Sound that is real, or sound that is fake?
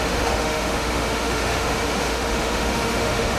fake